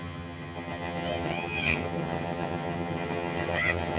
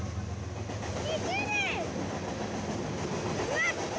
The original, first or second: second